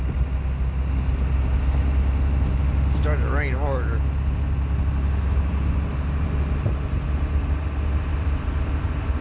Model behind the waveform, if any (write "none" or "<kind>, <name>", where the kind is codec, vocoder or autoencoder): none